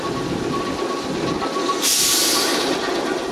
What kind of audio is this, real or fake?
real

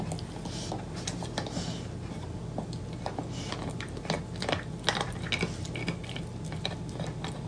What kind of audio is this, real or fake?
real